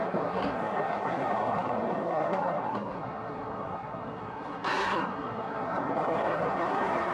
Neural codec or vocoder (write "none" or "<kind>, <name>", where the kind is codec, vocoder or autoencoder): codec, SNAC